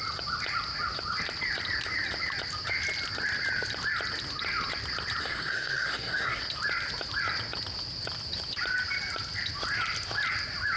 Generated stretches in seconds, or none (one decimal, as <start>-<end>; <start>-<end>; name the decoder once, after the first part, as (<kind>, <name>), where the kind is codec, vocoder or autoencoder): 5.2-6.4 (codec, SNAC)